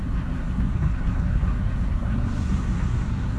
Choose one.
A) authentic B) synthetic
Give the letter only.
B